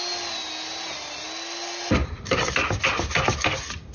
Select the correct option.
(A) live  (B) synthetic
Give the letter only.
A